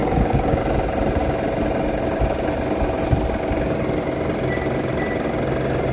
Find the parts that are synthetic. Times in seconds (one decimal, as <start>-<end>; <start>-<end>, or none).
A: 0.0-0.6